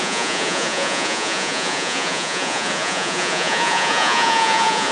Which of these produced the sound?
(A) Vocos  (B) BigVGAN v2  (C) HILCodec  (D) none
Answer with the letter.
A